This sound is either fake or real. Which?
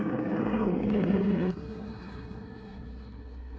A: fake